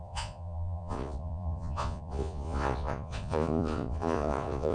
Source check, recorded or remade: remade